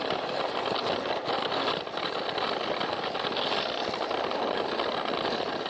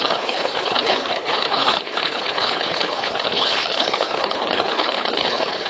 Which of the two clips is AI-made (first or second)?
second